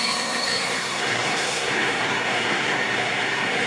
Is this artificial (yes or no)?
yes